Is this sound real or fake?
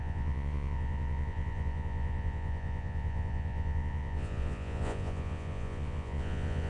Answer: fake